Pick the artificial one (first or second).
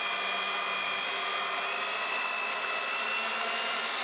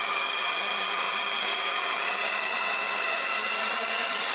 second